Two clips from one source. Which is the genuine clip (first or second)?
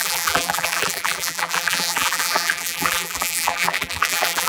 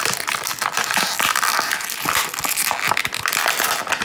second